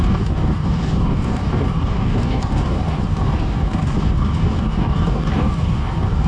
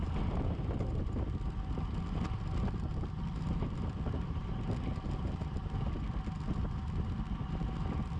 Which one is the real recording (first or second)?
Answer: second